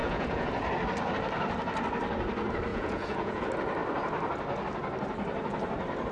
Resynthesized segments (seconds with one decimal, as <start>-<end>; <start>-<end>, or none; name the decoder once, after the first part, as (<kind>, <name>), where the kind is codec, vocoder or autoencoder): 0.0-0.5 (vocoder, Vocos); 2.7-3.4